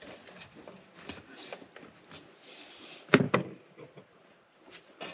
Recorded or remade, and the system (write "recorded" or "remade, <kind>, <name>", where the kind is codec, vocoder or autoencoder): recorded